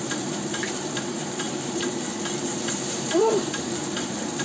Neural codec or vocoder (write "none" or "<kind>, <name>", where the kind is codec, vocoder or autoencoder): vocoder, BigVGAN v2